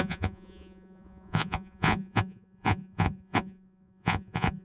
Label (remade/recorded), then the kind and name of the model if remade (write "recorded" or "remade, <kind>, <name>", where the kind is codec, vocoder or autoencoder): remade, vocoder, Vocos